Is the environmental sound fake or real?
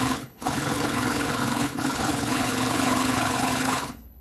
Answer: fake